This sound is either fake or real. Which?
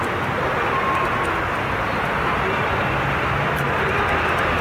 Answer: real